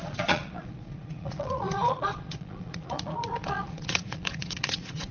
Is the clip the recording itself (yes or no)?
no